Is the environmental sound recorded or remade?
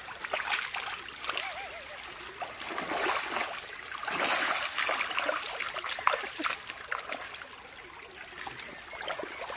recorded